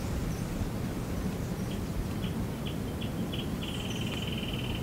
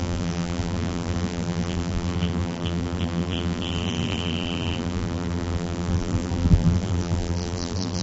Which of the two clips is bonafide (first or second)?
first